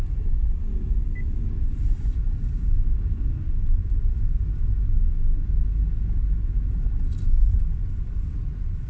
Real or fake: real